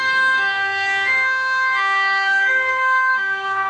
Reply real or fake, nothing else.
fake